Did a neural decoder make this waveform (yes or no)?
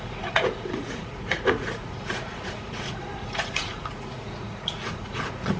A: yes